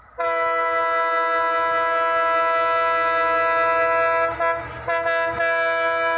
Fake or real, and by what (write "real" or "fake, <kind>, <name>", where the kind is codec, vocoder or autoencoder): real